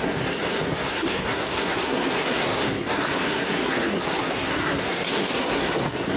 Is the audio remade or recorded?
remade